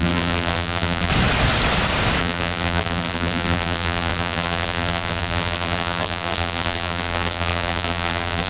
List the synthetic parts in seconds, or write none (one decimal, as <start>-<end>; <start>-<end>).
0.0-1.1; 2.2-8.5